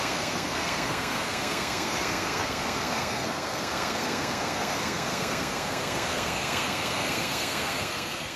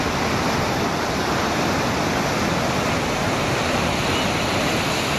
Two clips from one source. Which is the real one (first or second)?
second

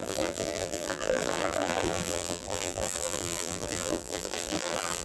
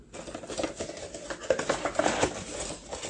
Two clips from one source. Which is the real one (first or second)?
second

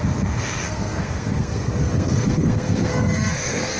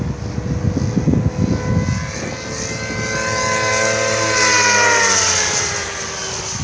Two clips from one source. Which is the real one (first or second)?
second